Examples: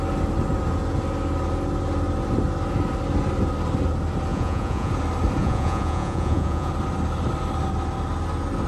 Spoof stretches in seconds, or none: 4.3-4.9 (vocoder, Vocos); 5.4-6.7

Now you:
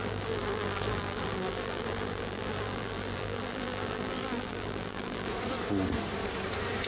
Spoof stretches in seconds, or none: 0.0-5.3 (vocoder, BigVGAN v2)

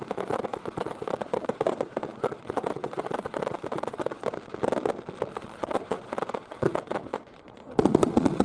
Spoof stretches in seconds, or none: 0.0-4.2 (vocoder, Vocos); 5.3-8.4

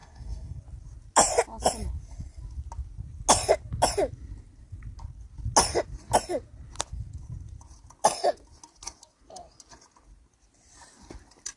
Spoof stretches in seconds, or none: 0.0-0.6 (codec, SNAC)

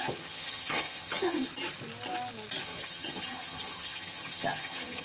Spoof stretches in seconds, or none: 0.0-1.5 (vocoder, HiFi-GAN); 2.6-5.0

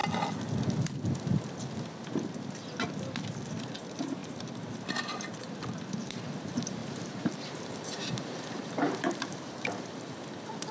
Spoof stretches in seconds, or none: 3.5-10.7 (vocoder, BigVGAN v2)

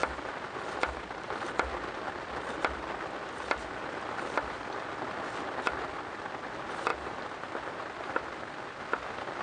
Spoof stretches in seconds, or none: none

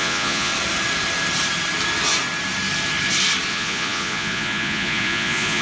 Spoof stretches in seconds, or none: 0.0-0.5 (vocoder, Vocos); 3.5-5.6